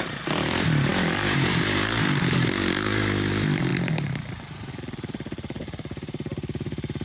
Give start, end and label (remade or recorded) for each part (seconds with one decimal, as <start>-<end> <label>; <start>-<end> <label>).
0.0-7.0 remade